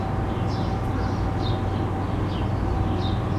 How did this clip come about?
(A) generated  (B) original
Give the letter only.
B